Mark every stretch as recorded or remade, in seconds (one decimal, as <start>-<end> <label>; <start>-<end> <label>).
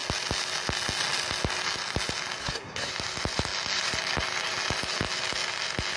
0.0-2.4 recorded; 2.4-2.9 remade; 2.9-6.0 recorded